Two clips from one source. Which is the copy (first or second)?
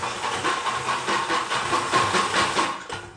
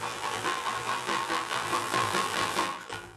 second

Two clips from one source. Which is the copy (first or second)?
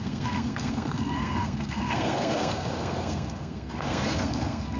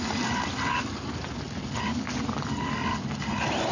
first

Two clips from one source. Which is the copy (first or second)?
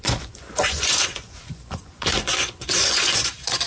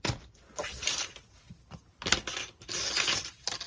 first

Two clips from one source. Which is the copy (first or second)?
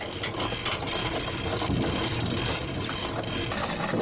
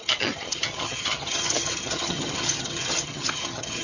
second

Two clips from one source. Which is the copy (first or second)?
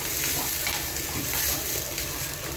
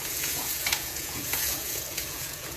second